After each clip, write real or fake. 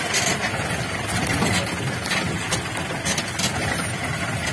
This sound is real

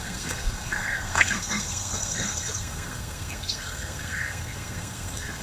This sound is fake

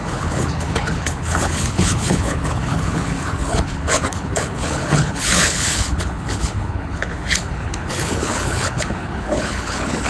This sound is fake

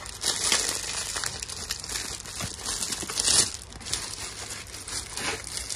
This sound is real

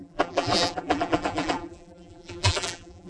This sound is fake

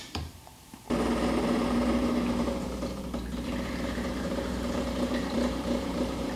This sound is fake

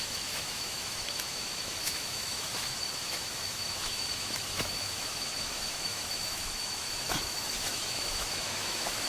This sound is fake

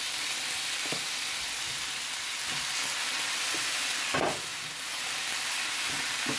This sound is real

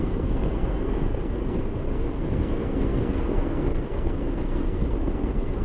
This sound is fake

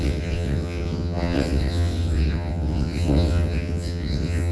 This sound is fake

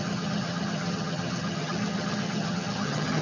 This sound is fake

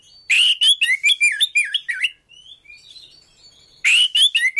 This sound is real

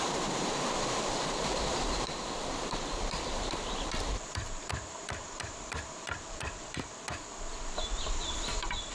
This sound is fake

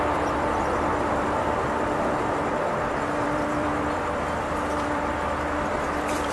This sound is fake